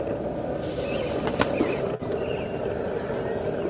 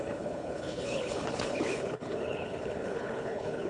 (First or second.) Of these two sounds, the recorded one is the first